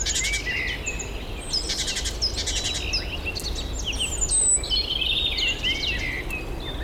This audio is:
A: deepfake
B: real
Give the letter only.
B